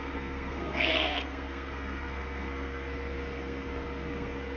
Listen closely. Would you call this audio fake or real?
fake